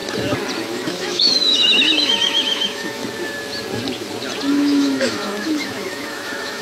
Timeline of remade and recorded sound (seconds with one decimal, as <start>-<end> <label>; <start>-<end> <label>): 0.0-0.6 recorded; 0.6-3.0 remade; 3.0-4.5 recorded; 4.5-6.6 remade